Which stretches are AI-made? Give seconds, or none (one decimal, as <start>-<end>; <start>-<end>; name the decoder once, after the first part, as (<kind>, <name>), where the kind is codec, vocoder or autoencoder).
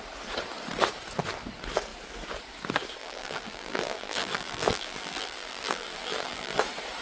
3.0-6.6 (vocoder, BigVGAN v2)